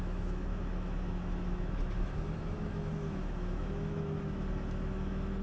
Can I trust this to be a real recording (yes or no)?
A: no